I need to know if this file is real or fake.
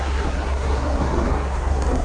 fake